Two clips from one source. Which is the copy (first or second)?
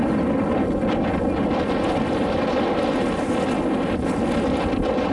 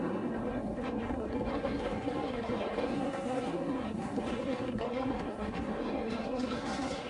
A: second